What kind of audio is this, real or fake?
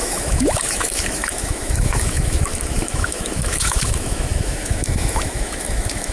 fake